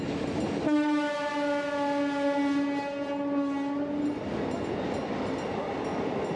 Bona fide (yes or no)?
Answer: yes